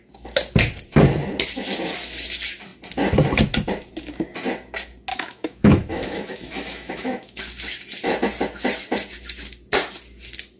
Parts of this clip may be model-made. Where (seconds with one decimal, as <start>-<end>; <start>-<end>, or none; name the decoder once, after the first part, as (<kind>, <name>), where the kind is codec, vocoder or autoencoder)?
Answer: 5.1-7.4 (autoencoder, DAC-VAE)